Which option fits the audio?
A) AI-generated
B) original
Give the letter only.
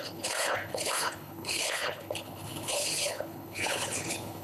A